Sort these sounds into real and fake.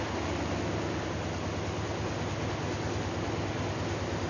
real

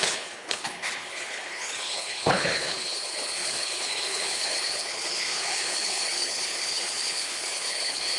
fake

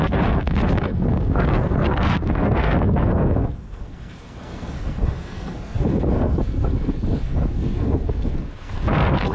fake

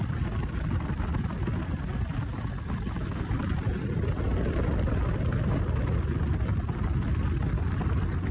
real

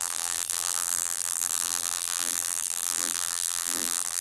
fake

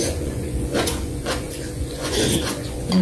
fake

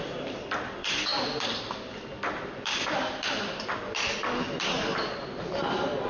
real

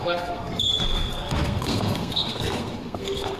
fake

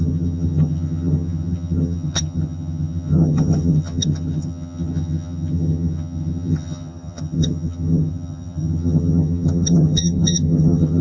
fake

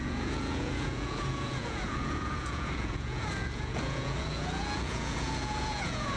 fake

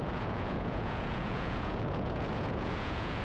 fake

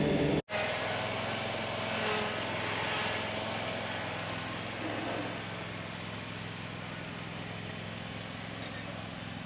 real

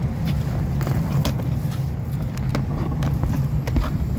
real